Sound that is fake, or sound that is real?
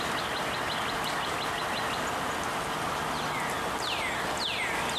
real